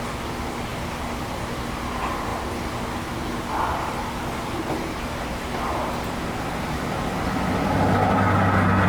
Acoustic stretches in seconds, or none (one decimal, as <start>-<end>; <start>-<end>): 0.0-8.9